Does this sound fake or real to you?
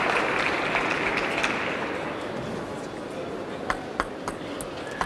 real